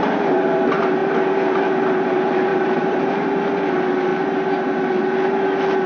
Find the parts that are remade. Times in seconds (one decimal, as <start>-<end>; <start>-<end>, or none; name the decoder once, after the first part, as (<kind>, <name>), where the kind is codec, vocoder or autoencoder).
2.5-3.5 (vocoder, BigVGAN v2)